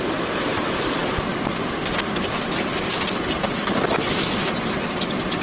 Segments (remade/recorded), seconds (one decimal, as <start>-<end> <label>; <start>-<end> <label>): 0.0-5.4 recorded